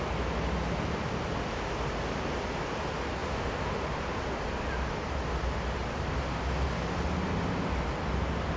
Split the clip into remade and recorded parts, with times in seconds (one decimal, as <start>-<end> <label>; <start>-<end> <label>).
0.0-8.6 recorded